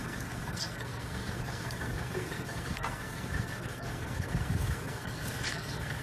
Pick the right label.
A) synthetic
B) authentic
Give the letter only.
A